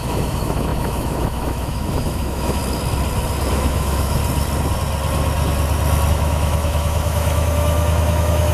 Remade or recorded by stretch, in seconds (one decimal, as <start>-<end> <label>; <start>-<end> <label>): 0.0-2.6 remade; 2.6-3.5 recorded; 3.5-4.2 remade; 4.2-6.1 recorded; 6.1-8.5 remade